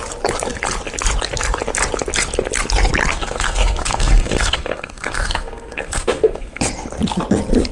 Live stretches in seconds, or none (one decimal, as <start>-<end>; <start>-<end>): 0.0-3.1; 6.6-7.7